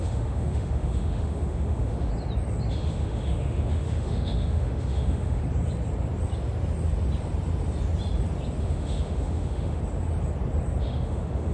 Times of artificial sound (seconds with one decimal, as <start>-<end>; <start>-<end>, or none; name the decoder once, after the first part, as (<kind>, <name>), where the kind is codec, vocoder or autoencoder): 0.0-2.1 (autoencoder, DAC-VAE); 2.7-5.4; 8.6-9.8; 10.8-11.5